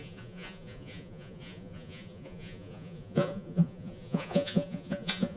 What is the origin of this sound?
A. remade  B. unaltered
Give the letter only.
A